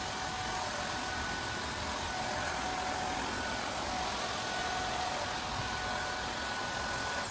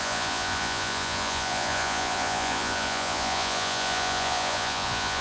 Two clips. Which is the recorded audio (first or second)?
first